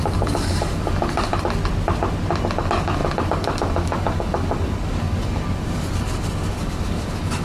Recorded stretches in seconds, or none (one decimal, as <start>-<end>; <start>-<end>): 1.3-2.6